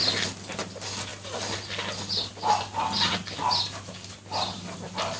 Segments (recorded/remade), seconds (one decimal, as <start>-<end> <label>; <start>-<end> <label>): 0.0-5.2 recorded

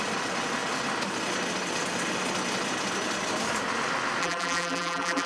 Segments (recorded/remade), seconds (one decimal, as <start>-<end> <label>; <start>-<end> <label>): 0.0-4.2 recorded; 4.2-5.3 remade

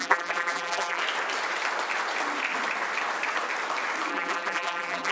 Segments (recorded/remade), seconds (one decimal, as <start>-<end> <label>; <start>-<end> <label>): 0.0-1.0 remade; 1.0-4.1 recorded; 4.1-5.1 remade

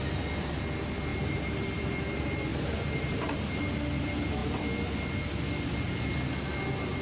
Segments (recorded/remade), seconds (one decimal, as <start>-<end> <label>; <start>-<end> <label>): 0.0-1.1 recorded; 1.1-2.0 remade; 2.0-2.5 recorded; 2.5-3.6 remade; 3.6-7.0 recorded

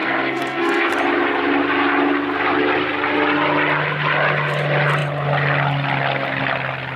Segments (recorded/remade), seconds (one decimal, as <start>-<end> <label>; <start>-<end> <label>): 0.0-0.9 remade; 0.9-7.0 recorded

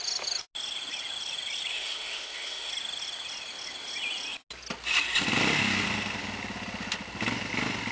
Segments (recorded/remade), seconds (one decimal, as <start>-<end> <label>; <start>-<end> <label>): 0.0-1.7 recorded; 1.7-2.7 remade; 2.7-7.9 recorded

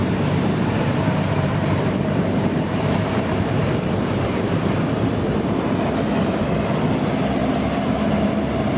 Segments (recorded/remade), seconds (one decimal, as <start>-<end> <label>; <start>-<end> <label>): 0.0-5.2 remade; 5.2-7.4 recorded; 7.4-8.3 remade; 8.3-8.8 recorded

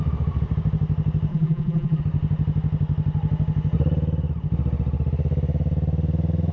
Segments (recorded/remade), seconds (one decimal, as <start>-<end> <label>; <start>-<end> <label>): 0.0-1.3 recorded; 1.3-2.0 remade; 2.0-6.5 recorded